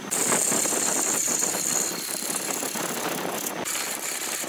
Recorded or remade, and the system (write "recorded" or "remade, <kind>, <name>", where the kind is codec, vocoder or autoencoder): recorded